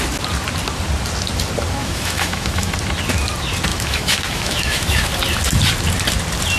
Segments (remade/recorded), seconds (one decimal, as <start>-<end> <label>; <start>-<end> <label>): 0.0-1.8 recorded; 1.8-2.7 remade; 2.7-3.7 recorded; 3.7-5.1 remade; 5.1-6.6 recorded